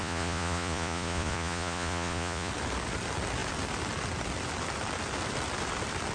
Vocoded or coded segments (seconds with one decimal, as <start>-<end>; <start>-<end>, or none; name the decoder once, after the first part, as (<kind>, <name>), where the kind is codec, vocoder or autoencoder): 0.0-2.5 (vocoder, Vocos)